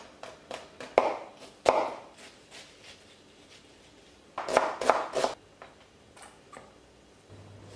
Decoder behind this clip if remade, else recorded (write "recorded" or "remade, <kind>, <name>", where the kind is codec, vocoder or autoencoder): recorded